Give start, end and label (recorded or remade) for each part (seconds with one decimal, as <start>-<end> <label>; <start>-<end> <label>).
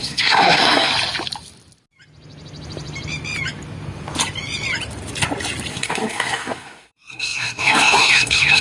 0.0-0.9 remade; 0.9-5.7 recorded; 5.7-8.6 remade